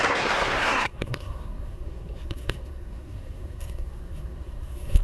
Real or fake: fake